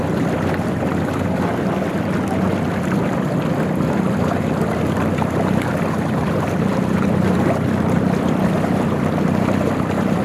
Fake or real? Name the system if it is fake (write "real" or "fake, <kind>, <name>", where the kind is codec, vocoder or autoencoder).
fake, vocoder, BigVGAN v2